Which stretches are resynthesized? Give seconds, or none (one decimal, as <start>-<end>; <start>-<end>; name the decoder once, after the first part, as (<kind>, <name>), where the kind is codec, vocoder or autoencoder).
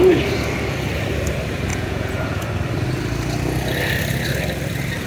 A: 1.7-2.4 (vocoder, Vocos)